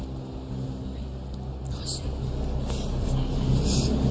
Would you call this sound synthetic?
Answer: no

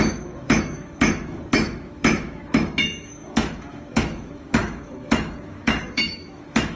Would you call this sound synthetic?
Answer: yes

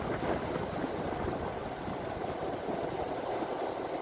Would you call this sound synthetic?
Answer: no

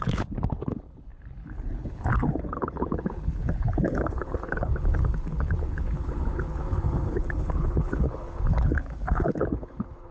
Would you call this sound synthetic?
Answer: yes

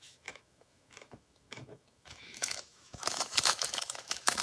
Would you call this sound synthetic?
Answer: yes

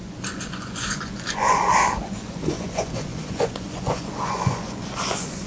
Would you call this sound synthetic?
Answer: yes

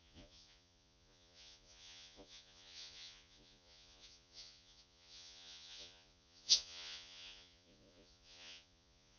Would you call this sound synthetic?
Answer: yes